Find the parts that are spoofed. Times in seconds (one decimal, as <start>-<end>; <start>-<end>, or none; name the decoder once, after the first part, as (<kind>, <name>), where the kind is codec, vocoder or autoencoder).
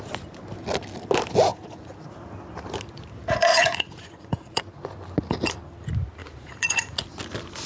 1.5-2.1 (vocoder, Vocos); 3.5-4.6; 6.2-7.0